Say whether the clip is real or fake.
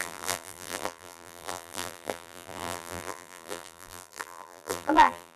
fake